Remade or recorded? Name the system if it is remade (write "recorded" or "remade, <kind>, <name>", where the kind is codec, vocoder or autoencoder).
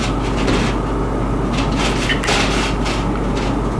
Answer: recorded